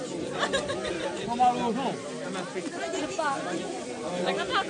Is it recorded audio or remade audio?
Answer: recorded